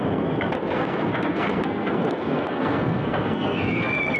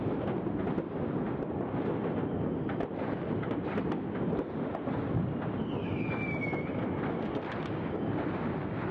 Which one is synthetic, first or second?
first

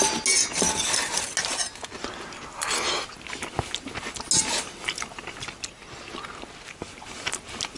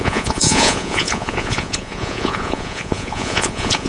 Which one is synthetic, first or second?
second